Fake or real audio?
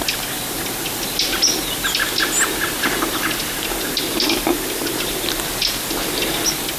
real